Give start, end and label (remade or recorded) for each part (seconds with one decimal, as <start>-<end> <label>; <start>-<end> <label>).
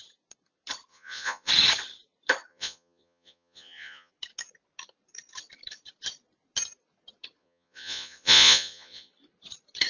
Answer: 0.0-0.9 recorded; 0.9-1.5 remade; 1.5-2.5 recorded; 2.5-4.1 remade; 4.1-7.4 recorded; 7.4-9.1 remade; 9.1-9.9 recorded